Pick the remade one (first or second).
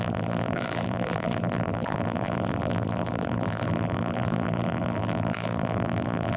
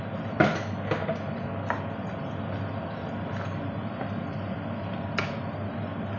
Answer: first